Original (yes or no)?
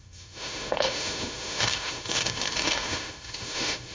no